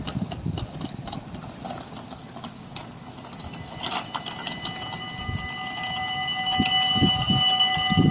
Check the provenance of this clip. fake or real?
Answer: real